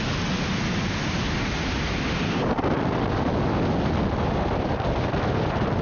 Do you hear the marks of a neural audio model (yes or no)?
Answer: no